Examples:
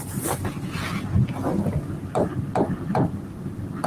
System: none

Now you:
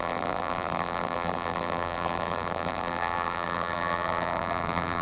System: vocoder, BigVGAN v2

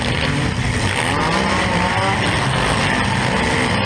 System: none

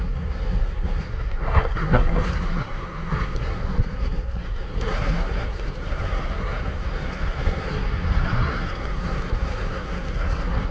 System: codec, SNAC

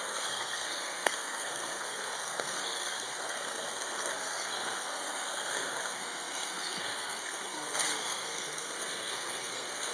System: codec, SNAC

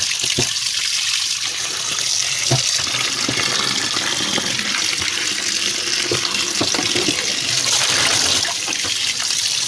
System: none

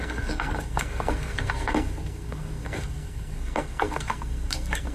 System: codec, SNAC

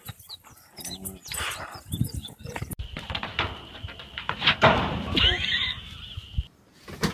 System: none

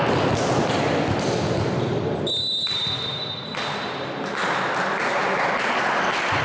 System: none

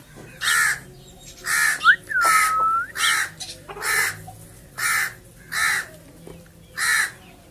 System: none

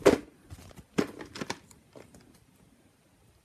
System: vocoder, BigVGAN v2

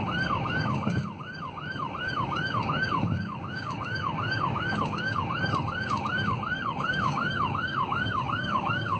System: codec, DAC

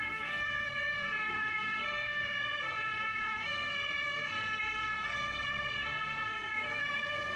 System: codec, SNAC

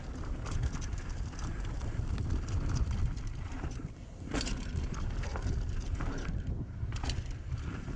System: none